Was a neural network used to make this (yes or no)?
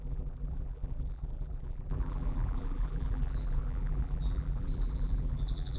yes